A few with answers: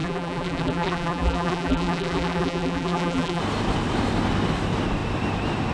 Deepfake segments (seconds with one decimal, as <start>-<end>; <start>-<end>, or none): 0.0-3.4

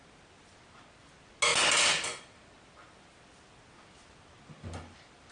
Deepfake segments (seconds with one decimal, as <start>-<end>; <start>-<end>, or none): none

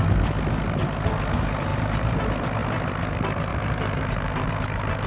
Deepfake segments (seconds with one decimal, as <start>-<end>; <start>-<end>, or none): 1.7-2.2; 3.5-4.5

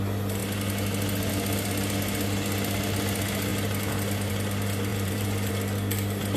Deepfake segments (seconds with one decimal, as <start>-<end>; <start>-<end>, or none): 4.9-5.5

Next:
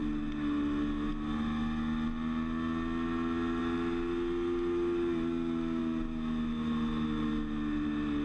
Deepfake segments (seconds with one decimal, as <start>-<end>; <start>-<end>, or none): none

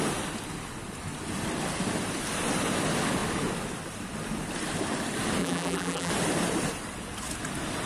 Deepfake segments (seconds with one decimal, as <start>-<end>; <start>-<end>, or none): 5.4-6.1

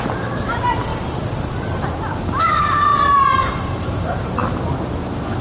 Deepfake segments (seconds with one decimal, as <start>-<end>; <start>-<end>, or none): 0.0-2.9; 3.5-4.4

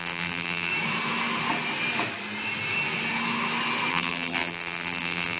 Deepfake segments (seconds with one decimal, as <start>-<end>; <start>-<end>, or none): 0.0-0.7; 3.9-5.4